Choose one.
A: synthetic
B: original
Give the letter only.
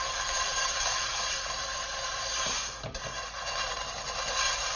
B